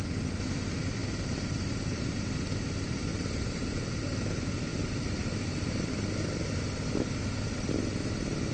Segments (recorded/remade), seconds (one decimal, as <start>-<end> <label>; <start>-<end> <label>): 0.0-1.0 recorded; 1.0-2.2 remade; 2.2-3.1 recorded; 3.1-4.2 remade; 4.2-4.7 recorded; 4.7-6.6 remade; 6.6-8.5 recorded